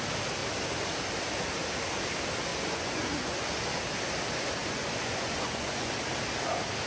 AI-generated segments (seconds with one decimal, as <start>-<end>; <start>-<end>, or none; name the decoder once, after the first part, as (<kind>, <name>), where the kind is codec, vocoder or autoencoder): 2.5-3.8 (vocoder, Vocos); 4.6-5.9

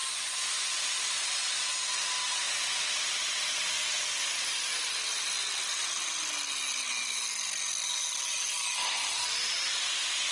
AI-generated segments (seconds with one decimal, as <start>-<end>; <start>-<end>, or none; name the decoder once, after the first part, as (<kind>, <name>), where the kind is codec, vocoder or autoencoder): 0.0-1.0 (vocoder, Vocos)

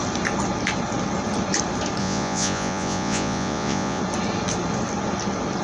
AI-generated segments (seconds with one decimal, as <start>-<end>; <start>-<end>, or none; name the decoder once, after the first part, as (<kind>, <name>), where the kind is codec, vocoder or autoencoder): 2.0-4.0 (vocoder, Vocos)